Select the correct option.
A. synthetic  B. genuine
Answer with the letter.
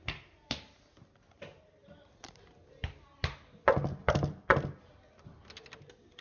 B